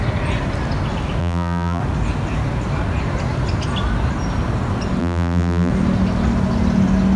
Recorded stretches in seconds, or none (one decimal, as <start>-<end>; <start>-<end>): 0.0-1.2; 1.8-5.0; 5.7-7.2